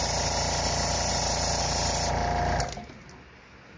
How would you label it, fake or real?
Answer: real